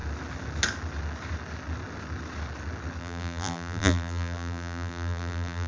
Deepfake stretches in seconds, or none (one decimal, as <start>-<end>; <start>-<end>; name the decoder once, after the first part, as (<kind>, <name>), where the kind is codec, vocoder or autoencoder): 3.0-5.7 (vocoder, BigVGAN v2)